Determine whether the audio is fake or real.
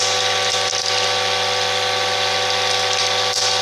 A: real